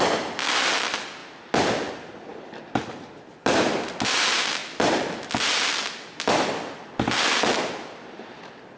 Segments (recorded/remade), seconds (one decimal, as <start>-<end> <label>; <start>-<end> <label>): 0.0-8.8 recorded